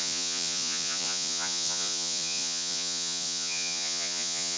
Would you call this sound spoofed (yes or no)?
yes